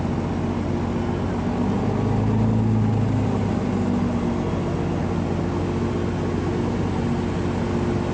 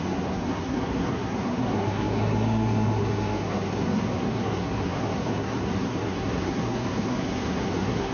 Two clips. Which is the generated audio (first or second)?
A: second